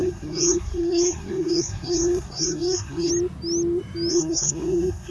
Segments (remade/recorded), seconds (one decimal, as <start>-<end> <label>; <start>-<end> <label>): 0.0-3.1 remade; 3.1-4.1 recorded; 4.1-5.1 remade